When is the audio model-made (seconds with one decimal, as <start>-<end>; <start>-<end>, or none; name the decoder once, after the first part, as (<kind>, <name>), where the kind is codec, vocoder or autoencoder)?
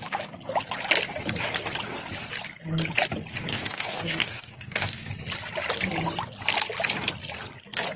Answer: 3.5-5.1 (codec, DAC)